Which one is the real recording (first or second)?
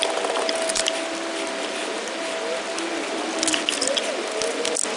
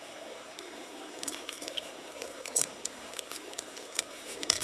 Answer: first